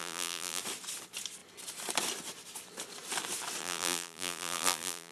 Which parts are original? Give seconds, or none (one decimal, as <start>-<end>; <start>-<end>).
0.6-3.6